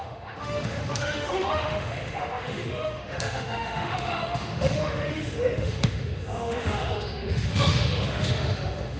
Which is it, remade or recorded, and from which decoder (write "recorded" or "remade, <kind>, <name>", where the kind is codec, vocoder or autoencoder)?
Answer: remade, autoencoder, DAC-VAE